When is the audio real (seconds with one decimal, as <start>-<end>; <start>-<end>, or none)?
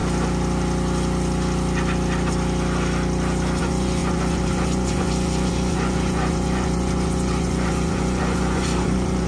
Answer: 0.0-3.6